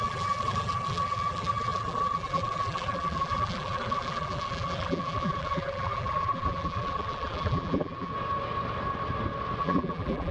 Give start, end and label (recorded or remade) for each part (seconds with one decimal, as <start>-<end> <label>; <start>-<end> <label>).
0.0-8.1 remade; 8.1-9.6 recorded; 9.6-10.3 remade